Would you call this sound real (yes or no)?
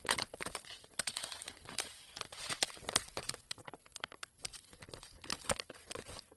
no